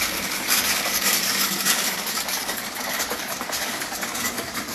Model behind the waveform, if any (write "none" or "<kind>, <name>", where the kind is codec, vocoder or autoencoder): codec, DAC